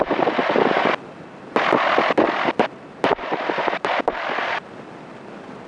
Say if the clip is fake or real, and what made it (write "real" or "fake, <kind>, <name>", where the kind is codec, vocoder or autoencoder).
real